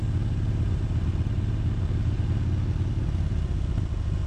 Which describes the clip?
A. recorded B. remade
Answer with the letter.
A